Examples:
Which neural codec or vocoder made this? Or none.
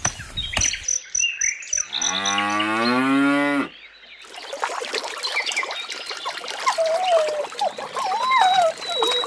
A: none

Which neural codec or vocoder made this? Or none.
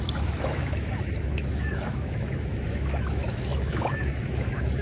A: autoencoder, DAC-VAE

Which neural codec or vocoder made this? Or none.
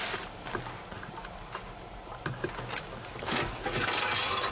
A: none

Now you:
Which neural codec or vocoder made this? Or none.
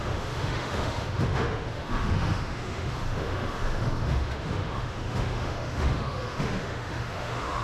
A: autoencoder, DAC-VAE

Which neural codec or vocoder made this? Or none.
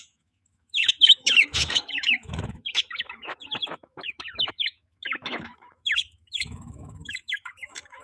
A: autoencoder, DAC-VAE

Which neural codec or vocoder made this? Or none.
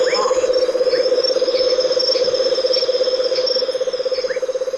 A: none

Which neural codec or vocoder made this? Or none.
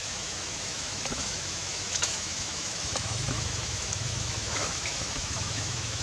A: autoencoder, DAC-VAE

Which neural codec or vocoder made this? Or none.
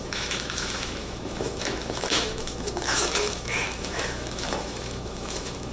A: autoencoder, DAC-VAE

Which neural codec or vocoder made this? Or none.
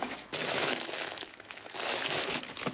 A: autoencoder, DAC-VAE